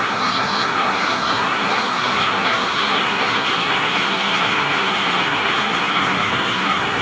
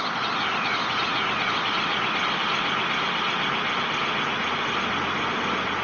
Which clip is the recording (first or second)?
second